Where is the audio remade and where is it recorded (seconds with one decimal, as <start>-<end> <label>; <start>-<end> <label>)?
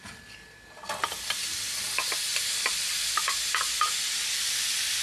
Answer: 0.0-5.0 recorded